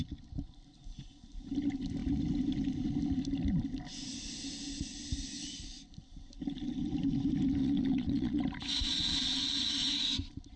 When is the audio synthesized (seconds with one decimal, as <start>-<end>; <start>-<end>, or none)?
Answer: 7.6-8.4; 8.9-9.4